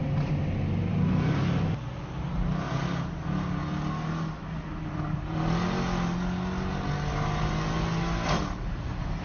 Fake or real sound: real